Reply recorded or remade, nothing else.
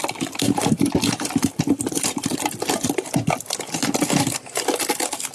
recorded